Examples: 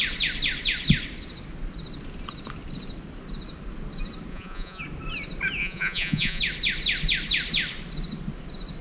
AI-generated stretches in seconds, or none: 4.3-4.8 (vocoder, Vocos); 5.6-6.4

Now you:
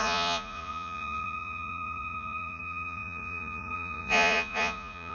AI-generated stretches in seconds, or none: 0.0-5.1 (vocoder, Vocos)

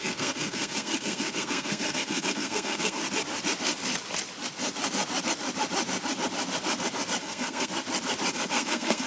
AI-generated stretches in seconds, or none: 0.0-3.0 (codec, SNAC); 7.2-7.7; 8.3-9.1

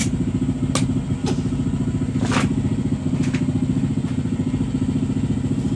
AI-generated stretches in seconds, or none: none

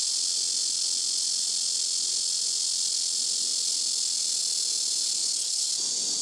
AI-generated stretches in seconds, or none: 5.2-5.7 (codec, HILCodec)